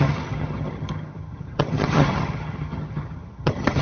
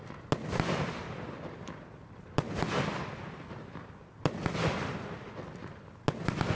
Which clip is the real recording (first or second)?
second